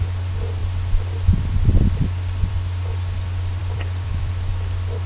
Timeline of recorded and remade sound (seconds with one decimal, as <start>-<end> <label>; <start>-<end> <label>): 0.0-3.6 recorded; 3.6-4.3 remade; 4.3-5.1 recorded